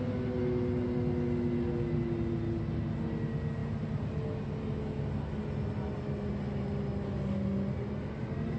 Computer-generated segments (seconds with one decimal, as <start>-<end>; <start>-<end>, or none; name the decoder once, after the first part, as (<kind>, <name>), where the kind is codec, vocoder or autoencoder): none